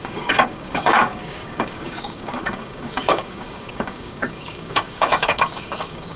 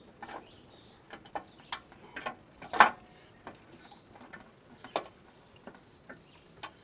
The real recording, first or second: second